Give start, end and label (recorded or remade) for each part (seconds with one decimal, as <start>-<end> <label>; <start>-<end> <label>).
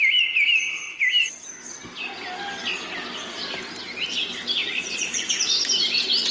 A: 0.0-4.6 recorded; 4.6-5.3 remade; 5.3-6.3 recorded